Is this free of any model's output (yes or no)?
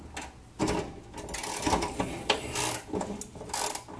yes